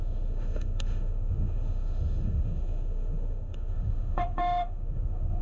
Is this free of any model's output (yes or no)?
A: no